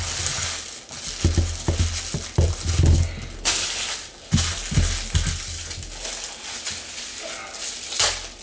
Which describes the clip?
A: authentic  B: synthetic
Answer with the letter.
A